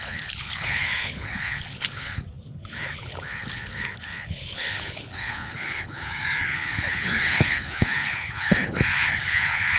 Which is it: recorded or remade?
remade